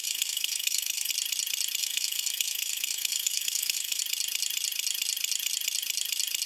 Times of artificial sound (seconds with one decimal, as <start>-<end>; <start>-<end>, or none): 0.0-1.1; 1.8-4.0